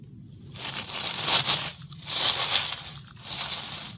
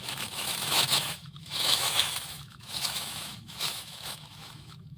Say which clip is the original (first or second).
first